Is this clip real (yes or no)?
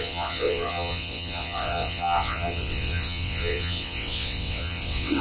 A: no